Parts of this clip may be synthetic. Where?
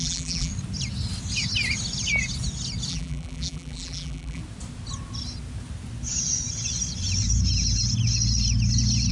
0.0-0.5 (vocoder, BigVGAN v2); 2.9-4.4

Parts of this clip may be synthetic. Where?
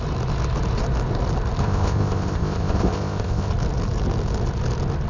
1.6-3.5 (codec, ZipCodec)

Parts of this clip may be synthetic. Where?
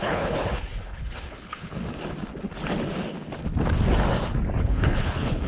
0.0-1.8 (codec, HILCodec); 4.6-5.5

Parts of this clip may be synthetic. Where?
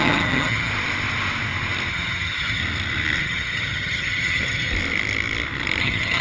0.0-0.7 (vocoder, HiFi-GAN); 1.9-2.6; 3.2-4.7; 5.8-6.2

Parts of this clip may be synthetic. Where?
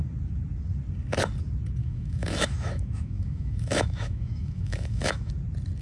1.8-5.3 (autoencoder, DAC-VAE)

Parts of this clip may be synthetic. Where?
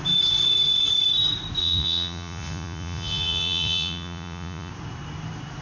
1.6-4.7 (vocoder, Vocos)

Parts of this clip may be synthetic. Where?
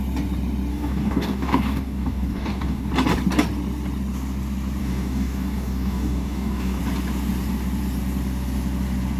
0.7-2.9 (codec, DAC); 4.8-6.8